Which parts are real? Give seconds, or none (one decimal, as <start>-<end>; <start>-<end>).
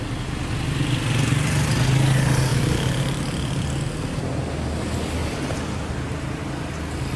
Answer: 0.0-2.5; 3.6-5.2; 5.9-7.2